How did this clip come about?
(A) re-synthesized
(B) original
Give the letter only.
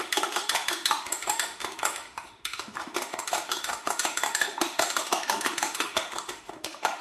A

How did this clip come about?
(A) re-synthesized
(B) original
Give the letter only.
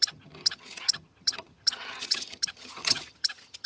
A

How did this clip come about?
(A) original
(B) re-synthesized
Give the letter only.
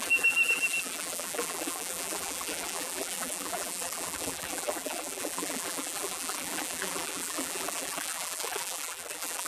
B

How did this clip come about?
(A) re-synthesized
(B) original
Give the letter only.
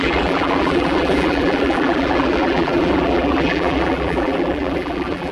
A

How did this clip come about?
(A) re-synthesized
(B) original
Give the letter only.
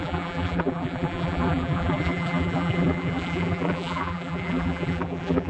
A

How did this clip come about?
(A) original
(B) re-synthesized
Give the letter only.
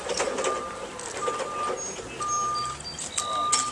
A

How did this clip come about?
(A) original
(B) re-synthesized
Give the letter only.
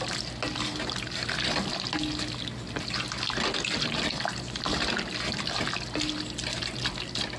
A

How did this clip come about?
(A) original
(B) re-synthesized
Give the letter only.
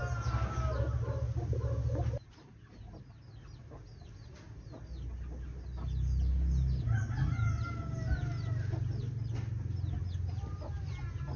A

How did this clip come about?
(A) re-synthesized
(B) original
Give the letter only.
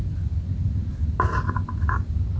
B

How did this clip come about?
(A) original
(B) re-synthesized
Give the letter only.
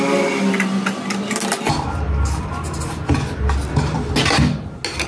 A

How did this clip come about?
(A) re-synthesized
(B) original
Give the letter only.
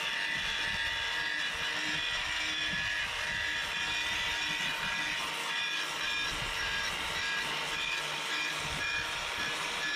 B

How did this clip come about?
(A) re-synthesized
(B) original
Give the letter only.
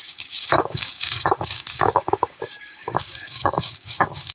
A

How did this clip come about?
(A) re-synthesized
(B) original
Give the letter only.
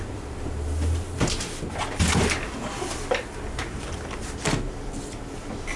B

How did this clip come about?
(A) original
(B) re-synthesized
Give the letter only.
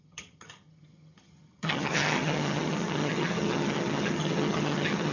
B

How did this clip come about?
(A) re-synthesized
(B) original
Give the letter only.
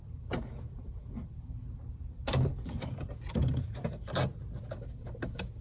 B